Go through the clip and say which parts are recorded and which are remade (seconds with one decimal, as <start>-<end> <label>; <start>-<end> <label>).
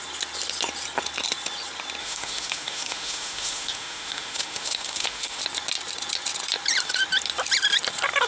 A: 0.0-2.0 recorded; 2.0-5.4 remade; 5.4-8.3 recorded